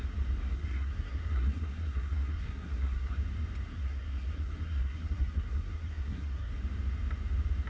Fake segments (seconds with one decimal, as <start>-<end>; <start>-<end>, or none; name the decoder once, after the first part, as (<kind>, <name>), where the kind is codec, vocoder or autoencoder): 0.5-3.1 (codec, SNAC); 3.7-6.5